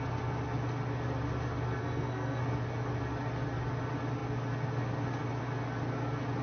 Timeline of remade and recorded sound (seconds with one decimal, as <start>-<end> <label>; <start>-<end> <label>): 0.0-1.8 recorded; 1.8-2.4 remade; 2.4-6.4 recorded